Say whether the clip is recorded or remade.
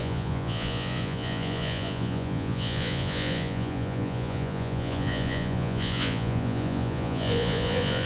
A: remade